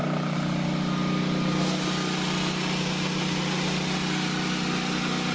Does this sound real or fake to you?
real